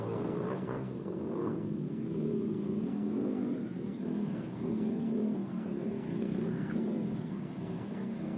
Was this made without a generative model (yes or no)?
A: no